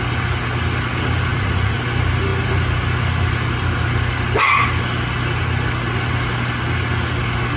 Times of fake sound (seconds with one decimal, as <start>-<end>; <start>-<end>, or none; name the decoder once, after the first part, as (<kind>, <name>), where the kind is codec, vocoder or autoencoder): 1.3-1.8 (vocoder, Vocos)